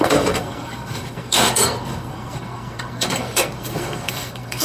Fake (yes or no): yes